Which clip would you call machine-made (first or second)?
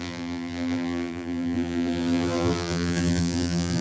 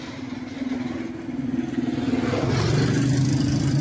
first